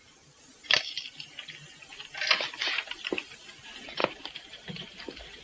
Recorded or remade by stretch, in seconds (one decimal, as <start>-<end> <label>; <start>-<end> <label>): 0.0-0.9 remade; 0.9-4.0 recorded; 4.0-5.4 remade